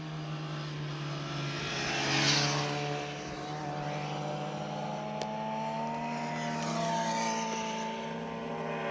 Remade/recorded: recorded